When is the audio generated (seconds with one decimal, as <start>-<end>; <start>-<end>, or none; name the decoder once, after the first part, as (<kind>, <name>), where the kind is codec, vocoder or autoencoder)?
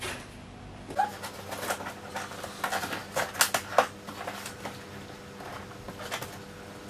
none